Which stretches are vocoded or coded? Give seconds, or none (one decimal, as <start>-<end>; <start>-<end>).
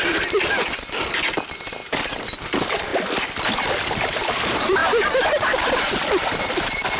0.0-1.8; 2.5-7.0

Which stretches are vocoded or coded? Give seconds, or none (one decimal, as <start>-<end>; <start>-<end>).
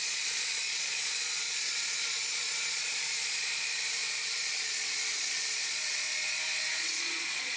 0.0-7.6